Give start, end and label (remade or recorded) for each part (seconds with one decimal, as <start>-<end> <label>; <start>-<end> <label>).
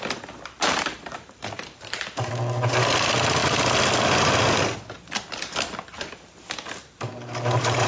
0.0-1.1 recorded; 1.1-2.3 remade; 2.3-7.9 recorded